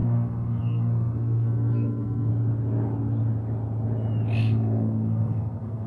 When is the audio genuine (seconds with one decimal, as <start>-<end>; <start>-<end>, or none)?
2.3-4.4